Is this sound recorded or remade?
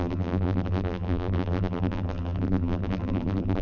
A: remade